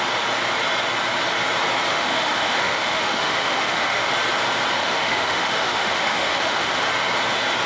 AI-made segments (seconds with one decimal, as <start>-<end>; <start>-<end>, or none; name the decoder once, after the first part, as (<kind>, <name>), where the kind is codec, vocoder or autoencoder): 1.9-4.1 (autoencoder, DAC-VAE); 4.8-6.9